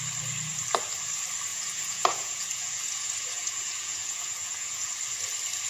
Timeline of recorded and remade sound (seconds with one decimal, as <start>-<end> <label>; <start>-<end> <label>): 0.0-1.5 recorded; 1.5-4.9 remade; 4.9-5.7 recorded